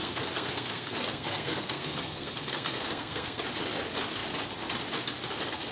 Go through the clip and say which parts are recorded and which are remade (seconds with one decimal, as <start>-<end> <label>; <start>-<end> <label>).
0.0-3.4 remade; 3.4-5.7 recorded